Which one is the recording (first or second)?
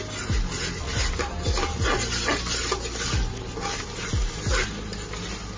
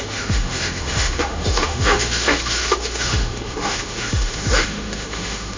first